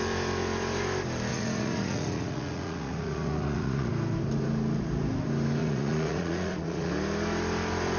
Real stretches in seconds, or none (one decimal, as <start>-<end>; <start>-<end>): 0.0-1.3; 3.9-5.6; 6.9-8.0